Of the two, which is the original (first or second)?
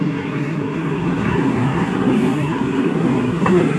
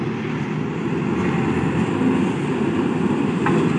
second